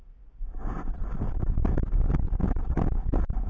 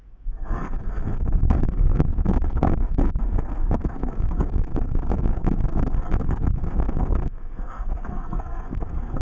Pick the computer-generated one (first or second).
second